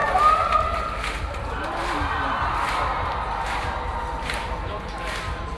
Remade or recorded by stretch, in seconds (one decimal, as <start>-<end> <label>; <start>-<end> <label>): 0.0-5.6 recorded